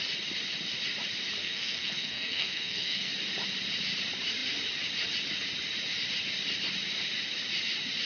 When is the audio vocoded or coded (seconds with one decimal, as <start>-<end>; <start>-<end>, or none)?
1.4-3.1